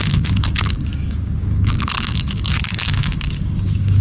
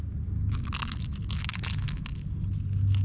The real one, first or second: second